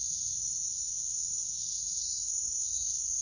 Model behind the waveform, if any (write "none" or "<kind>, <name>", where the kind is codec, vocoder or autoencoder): codec, SNAC